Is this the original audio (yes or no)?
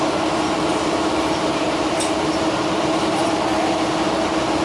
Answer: yes